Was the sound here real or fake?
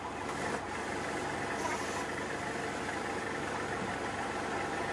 real